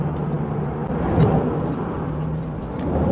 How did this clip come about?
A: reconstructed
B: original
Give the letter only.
B